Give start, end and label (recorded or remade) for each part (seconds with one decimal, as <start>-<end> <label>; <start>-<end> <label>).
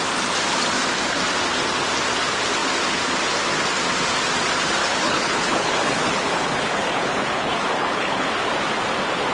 0.0-4.8 recorded; 4.8-8.3 remade; 8.3-9.3 recorded